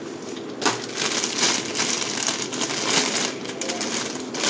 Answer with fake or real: real